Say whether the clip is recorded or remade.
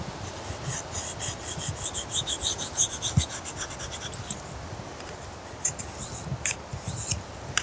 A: recorded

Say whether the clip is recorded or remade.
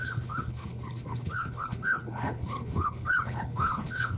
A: remade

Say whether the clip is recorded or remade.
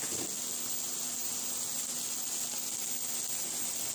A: recorded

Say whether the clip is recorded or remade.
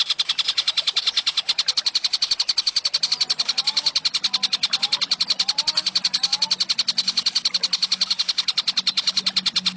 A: recorded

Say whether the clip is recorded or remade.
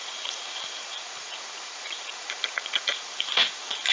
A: remade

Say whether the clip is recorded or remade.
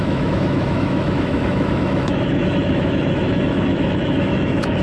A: remade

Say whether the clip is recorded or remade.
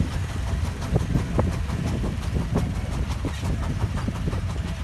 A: recorded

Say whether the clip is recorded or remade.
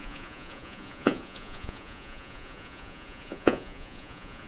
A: remade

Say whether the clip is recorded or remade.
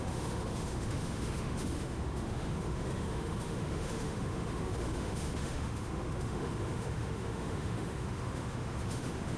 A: remade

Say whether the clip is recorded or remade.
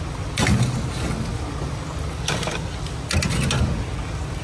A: recorded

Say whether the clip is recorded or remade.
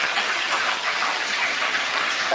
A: remade